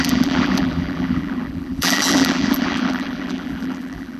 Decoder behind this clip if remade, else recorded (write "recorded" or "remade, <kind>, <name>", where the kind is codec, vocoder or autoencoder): remade, vocoder, BigVGAN v2